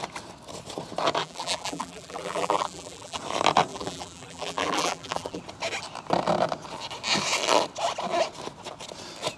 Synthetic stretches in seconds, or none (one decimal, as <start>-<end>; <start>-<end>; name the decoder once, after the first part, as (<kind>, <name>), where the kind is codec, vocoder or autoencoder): 1.2-3.2 (vocoder, BigVGAN v2); 3.7-5.4